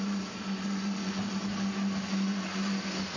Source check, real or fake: real